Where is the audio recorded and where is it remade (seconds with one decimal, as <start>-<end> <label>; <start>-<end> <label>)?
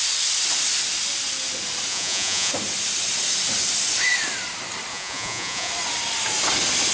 0.0-1.9 recorded; 1.9-2.5 remade; 2.5-4.9 recorded; 4.9-5.7 remade; 5.7-6.9 recorded